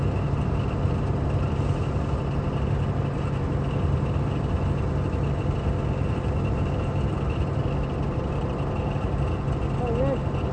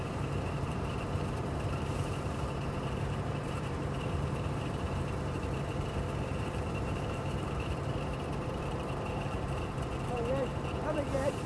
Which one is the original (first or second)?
first